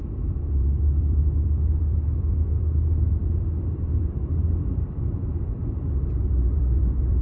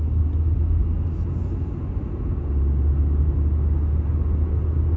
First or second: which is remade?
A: first